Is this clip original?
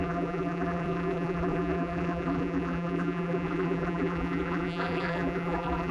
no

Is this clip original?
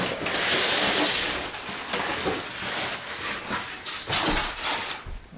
yes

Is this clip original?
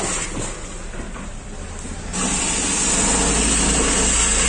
yes